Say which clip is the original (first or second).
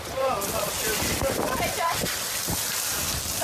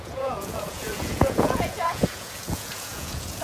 first